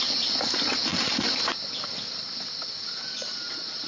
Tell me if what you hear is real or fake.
real